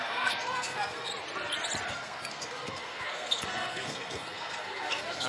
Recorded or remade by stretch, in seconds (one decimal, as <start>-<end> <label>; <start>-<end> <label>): 0.0-1.1 remade; 1.1-1.9 recorded; 1.9-5.3 remade